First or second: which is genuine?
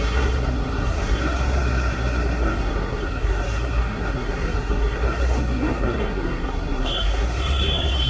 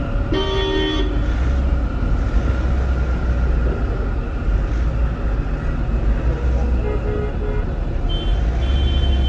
second